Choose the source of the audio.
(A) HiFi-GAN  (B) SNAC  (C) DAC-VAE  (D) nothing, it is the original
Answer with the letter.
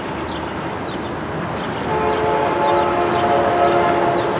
D